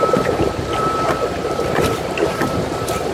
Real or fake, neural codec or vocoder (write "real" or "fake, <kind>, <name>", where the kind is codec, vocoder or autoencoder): fake, vocoder, BigVGAN v2